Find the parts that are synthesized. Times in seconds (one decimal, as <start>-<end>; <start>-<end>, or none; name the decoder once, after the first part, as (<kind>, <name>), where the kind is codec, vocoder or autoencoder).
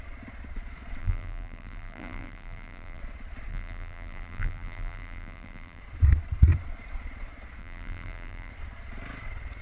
1.0-3.0 (vocoder, BigVGAN v2); 3.5-5.8; 7.6-8.5